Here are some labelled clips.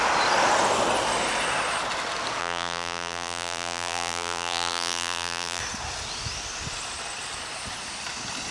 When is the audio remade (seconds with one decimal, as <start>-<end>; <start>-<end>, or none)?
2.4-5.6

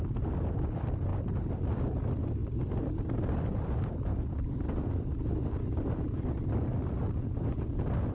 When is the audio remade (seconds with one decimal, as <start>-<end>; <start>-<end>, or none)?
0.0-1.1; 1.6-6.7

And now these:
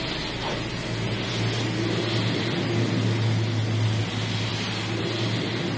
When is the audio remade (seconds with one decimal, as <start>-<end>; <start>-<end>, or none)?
none